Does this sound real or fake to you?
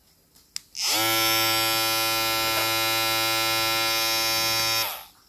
real